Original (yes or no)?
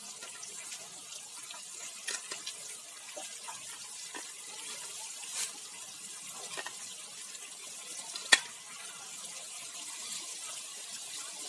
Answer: yes